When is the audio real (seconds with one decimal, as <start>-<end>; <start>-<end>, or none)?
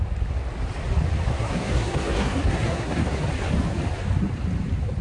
0.0-1.3; 3.2-5.0